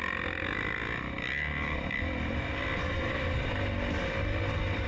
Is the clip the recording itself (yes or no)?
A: yes